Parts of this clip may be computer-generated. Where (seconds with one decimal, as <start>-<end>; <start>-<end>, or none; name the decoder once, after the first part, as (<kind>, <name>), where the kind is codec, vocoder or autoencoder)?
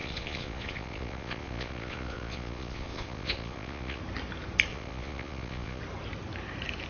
0.0-4.0 (vocoder, Vocos); 4.7-5.8